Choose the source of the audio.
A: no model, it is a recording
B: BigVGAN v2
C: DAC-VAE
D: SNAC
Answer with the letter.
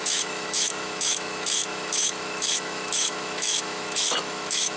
C